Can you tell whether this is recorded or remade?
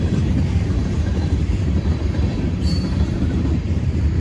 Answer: remade